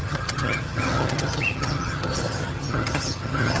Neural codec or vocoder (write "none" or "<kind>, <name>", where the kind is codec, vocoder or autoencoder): vocoder, HiFi-GAN